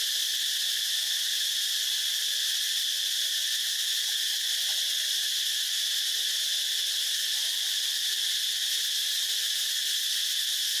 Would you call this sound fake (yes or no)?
no